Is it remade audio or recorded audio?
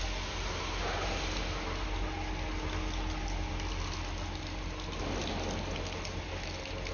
recorded